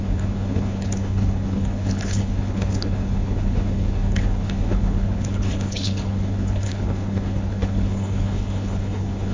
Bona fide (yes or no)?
no